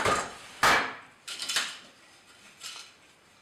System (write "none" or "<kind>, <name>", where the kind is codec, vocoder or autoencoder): none